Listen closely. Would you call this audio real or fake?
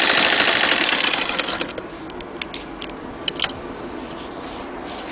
real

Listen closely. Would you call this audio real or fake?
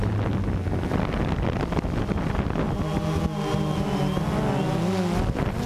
real